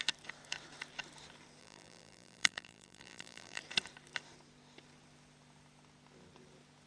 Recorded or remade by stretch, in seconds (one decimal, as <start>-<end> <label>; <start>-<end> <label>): 0.0-1.6 recorded; 1.6-3.6 remade; 3.6-6.9 recorded